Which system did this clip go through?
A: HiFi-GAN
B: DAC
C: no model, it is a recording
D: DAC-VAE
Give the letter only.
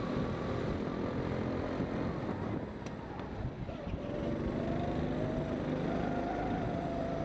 C